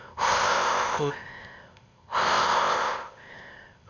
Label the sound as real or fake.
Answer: fake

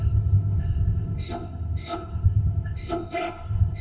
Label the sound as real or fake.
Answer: fake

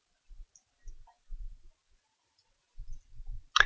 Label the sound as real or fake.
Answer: real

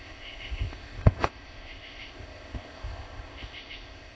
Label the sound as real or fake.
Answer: fake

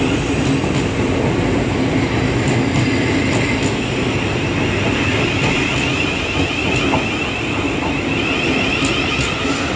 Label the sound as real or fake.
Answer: real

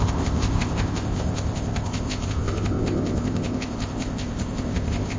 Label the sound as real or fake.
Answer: fake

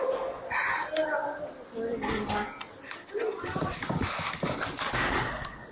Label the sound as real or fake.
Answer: real